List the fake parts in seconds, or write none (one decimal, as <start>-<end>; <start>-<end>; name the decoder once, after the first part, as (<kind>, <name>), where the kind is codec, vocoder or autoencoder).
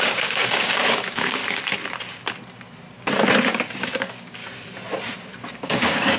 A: 0.0-1.4 (codec, DAC); 3.8-4.4; 5.5-6.2